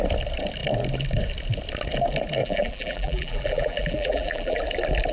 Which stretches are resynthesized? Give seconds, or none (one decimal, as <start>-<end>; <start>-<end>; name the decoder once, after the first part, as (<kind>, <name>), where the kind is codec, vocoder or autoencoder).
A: 2.4-4.6 (vocoder, BigVGAN v2)